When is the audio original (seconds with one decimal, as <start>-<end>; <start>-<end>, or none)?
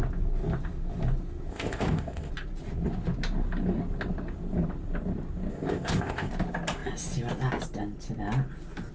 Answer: 0.0-1.5; 2.3-5.5; 6.3-8.9